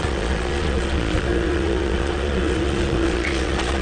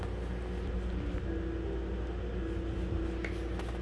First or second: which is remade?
first